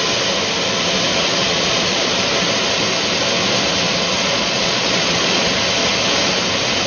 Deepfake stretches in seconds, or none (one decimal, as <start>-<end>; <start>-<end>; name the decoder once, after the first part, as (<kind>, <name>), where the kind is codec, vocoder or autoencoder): 1.1-2.1 (vocoder, Vocos); 4.2-5.6